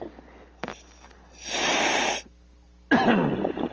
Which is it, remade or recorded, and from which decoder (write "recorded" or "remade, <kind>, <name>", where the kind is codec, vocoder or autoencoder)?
recorded